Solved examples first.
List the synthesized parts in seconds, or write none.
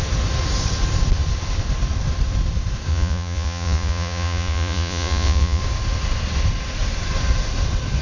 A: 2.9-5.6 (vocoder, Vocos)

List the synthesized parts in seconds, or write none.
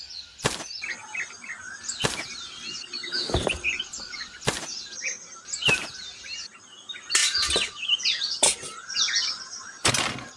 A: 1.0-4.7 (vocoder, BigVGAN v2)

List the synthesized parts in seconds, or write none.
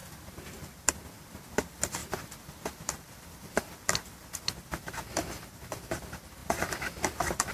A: 0.0-2.0 (vocoder, BigVGAN v2); 2.9-7.5